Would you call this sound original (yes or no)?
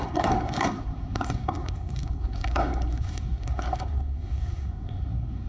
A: no